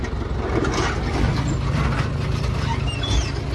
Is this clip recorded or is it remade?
recorded